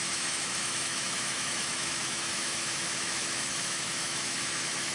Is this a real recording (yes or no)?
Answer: no